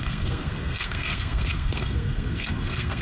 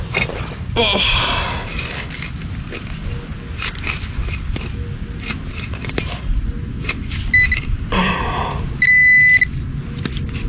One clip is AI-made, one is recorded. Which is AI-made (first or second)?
first